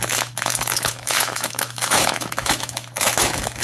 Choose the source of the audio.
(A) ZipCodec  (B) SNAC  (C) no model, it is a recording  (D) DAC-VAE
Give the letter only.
D